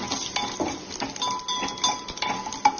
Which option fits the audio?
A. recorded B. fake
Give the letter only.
A